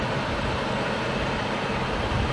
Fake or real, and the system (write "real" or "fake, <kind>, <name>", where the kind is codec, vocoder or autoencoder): real